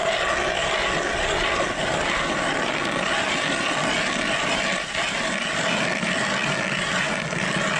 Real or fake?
real